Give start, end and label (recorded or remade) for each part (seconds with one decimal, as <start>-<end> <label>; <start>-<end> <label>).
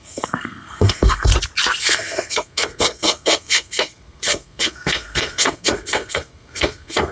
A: 0.0-1.3 remade; 1.3-1.8 recorded; 1.8-7.1 remade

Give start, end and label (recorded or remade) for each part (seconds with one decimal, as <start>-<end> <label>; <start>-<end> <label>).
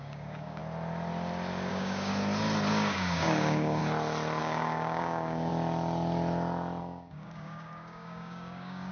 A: 0.0-0.6 remade; 0.6-1.7 recorded; 1.7-2.1 remade; 2.1-2.7 recorded; 2.7-3.8 remade; 3.8-4.4 recorded; 4.4-5.5 remade; 5.5-6.8 recorded; 6.8-8.9 remade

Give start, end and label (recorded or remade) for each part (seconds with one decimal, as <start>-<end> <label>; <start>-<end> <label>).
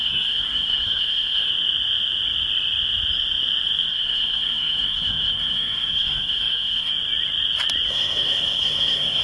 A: 0.0-1.5 remade; 1.5-3.9 recorded; 3.9-6.9 remade; 6.9-7.9 recorded; 7.9-9.2 remade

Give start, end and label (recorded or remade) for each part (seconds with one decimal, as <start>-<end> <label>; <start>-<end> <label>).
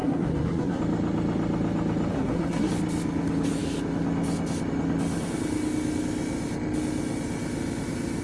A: 0.0-0.8 remade; 0.8-2.1 recorded; 2.1-2.7 remade; 2.7-8.2 recorded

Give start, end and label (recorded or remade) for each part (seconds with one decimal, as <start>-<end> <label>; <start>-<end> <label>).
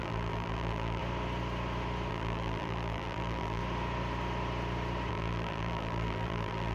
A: 0.0-1.0 remade; 1.0-2.1 recorded; 2.1-3.6 remade; 3.6-5.1 recorded; 5.1-6.7 remade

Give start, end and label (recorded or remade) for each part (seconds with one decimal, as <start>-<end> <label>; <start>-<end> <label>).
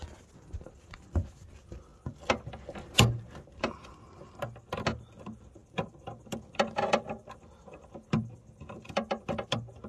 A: 0.0-9.9 recorded